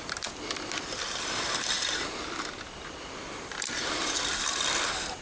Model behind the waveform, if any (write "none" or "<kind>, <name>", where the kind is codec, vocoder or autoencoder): none